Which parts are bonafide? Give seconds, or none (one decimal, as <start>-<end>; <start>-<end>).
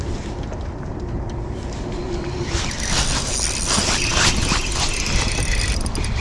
0.0-6.2